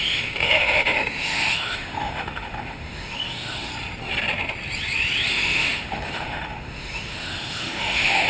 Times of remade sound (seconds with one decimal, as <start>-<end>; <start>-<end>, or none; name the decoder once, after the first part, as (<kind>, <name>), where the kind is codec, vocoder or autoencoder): 0.0-3.7 (autoencoder, DAC-VAE); 5.3-8.3